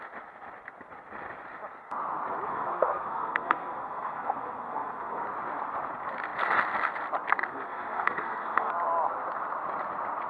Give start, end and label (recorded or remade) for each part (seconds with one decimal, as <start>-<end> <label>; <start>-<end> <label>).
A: 0.0-2.5 recorded; 2.5-5.2 remade; 5.2-7.5 recorded; 7.5-8.7 remade; 8.7-10.3 recorded